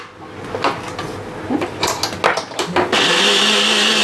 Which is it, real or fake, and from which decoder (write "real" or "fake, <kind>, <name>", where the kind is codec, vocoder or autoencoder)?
real